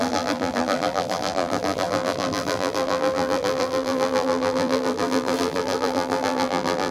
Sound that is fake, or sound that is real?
fake